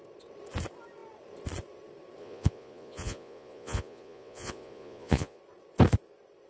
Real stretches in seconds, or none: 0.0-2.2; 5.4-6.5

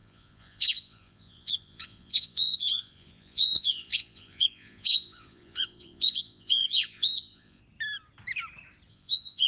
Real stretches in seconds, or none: 7.6-8.9

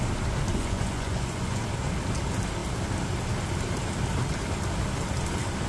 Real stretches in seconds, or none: 0.0-0.5; 1.6-5.7

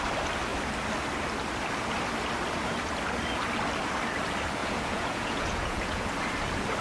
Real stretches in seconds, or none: 0.0-4.6; 6.1-6.8

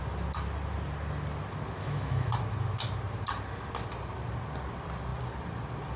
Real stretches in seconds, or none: 0.0-1.8; 2.3-6.0

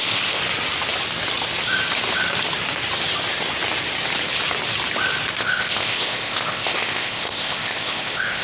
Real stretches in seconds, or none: 0.4-5.3